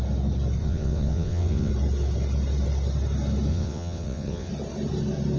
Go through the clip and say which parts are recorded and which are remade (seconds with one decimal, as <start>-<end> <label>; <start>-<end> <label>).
0.0-0.6 recorded; 0.6-1.7 remade; 1.7-3.5 recorded; 3.5-4.5 remade; 4.5-5.4 recorded